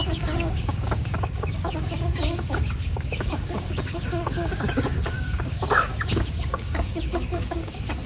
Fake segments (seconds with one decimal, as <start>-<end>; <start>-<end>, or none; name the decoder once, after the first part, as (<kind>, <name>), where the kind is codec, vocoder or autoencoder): 0.0-8.1 (codec, DAC)